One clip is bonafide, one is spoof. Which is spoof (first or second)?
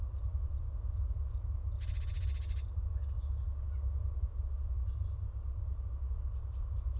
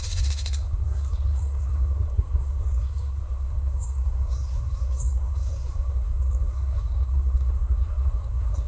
second